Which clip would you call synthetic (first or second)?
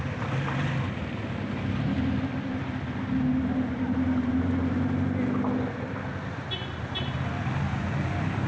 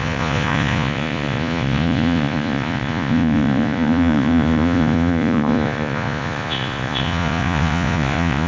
second